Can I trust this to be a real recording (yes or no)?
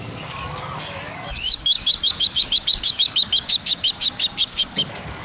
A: no